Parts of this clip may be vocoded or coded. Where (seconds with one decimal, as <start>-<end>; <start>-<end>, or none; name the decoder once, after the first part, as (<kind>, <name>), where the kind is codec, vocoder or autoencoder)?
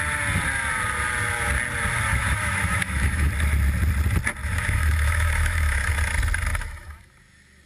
2.1-3.3 (autoencoder, DAC-VAE); 4.4-5.9; 6.5-7.1